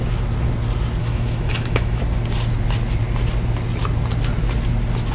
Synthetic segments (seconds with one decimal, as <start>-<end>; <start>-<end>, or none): 1.0-2.0